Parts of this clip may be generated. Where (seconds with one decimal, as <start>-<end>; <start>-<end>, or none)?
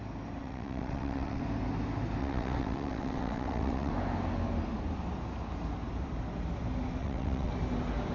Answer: 0.4-1.4; 2.2-3.9; 7.0-7.5